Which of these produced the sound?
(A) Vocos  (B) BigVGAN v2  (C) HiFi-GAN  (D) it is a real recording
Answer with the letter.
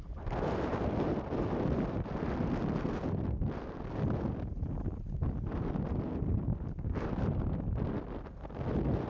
D